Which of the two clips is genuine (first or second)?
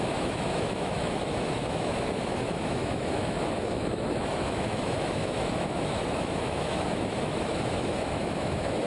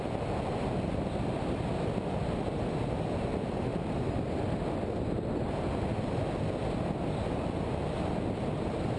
second